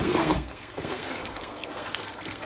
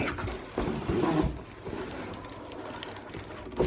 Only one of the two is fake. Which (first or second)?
first